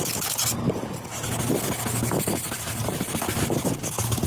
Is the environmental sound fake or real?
real